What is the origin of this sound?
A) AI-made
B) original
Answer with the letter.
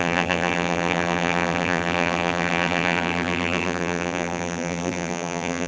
A